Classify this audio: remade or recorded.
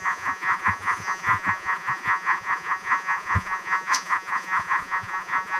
remade